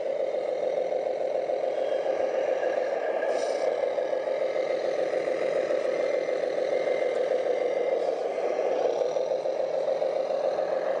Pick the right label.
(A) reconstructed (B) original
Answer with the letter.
B